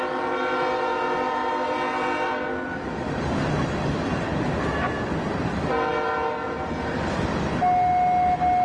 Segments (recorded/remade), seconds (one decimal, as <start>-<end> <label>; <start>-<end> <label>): 0.0-8.6 recorded